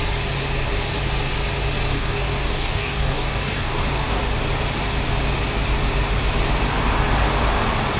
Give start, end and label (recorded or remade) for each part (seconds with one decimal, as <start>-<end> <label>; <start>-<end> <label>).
0.0-1.9 recorded; 1.9-4.2 remade; 4.2-8.0 recorded